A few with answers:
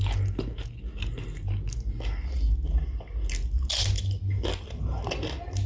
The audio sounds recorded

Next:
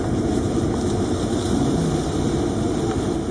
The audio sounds recorded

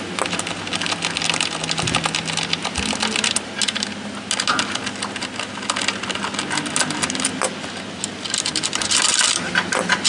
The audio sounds recorded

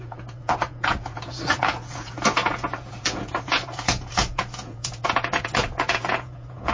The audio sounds remade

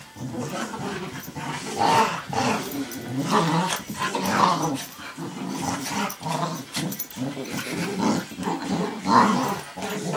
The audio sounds recorded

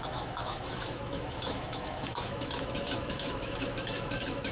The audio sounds remade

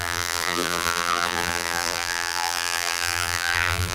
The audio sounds remade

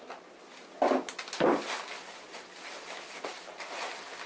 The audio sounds recorded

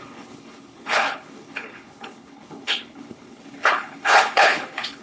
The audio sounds remade